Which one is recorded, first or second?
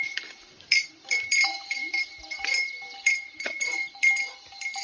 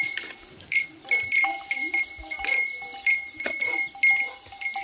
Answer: second